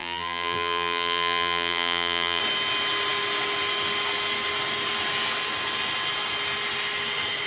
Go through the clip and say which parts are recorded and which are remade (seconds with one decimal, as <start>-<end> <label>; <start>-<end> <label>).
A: 0.0-2.4 remade; 2.4-7.5 recorded